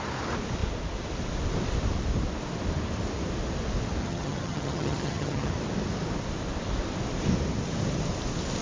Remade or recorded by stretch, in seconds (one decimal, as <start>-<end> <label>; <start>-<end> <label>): 0.0-4.0 recorded; 4.0-5.5 remade; 5.5-8.6 recorded